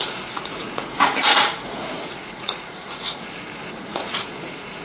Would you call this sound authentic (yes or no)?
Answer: no